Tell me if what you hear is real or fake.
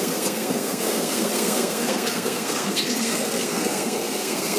fake